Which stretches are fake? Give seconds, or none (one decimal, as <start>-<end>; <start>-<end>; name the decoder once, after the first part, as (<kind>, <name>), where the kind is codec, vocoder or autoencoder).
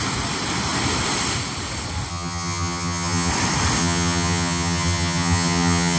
2.1-3.3 (vocoder, HiFi-GAN); 3.8-6.0